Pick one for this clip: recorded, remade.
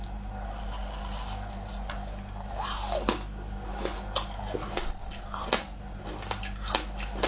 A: recorded